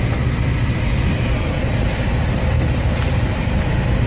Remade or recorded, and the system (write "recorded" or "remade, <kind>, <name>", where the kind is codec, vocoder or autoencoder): recorded